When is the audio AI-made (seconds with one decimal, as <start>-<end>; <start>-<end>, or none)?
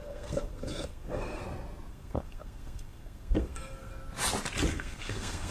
0.0-1.4; 1.9-3.9; 4.7-5.5